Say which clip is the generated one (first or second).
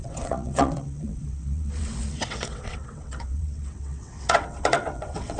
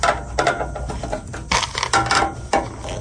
first